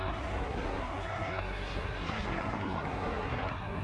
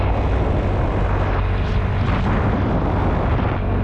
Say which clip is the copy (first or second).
first